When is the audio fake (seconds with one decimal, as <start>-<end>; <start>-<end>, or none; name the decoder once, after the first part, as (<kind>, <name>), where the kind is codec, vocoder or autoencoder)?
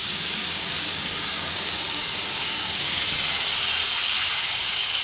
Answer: 0.0-3.0 (codec, DAC); 4.0-5.0